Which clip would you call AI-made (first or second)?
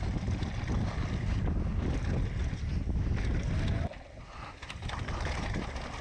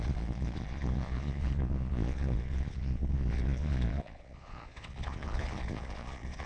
second